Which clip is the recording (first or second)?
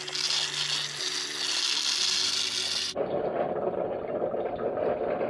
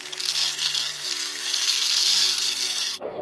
first